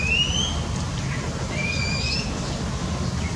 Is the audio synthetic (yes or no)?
no